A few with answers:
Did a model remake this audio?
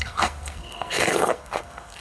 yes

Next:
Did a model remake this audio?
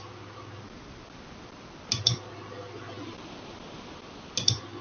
no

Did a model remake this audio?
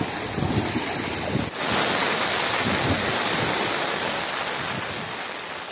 no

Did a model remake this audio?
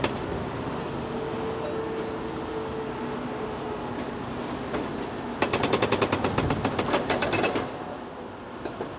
no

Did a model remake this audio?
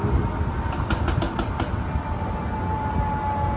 no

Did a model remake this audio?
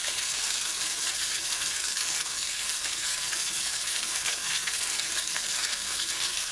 yes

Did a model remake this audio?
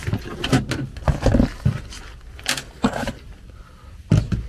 no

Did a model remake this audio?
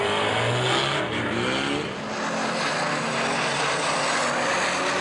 no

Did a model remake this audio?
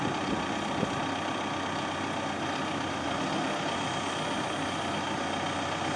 no